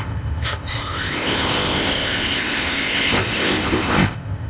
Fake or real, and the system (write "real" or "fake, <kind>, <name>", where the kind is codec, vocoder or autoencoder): fake, codec, ZipCodec